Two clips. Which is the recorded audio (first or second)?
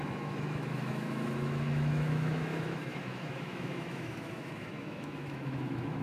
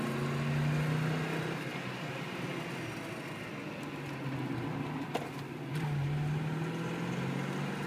second